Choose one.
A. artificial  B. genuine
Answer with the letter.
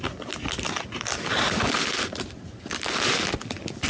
B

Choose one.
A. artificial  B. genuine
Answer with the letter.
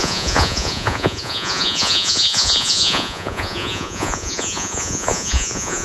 A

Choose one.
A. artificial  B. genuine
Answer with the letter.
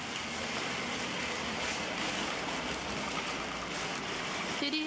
B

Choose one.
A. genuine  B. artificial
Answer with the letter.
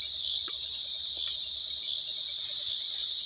A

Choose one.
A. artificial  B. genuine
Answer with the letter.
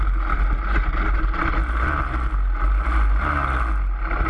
B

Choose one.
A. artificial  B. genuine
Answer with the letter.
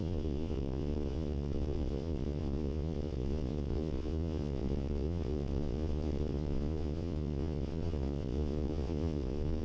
A